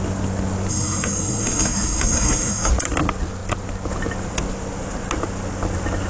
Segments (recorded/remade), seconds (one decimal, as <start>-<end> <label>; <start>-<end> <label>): 0.0-0.7 recorded; 0.7-2.7 remade; 2.7-6.1 recorded